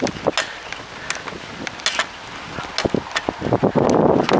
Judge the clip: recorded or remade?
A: recorded